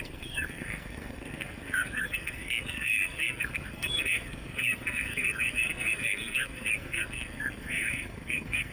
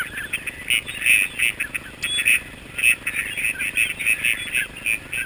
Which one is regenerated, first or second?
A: first